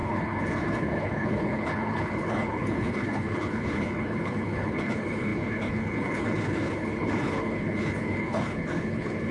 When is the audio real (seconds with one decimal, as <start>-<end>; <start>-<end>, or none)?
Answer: none